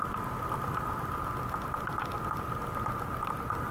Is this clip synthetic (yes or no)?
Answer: no